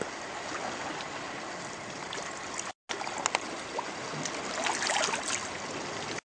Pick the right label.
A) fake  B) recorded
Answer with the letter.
B